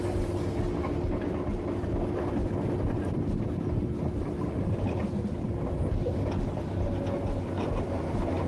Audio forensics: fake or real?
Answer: real